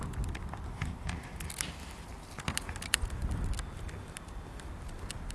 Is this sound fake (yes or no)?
no